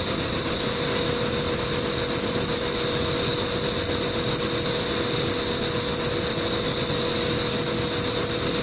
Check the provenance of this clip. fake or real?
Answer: real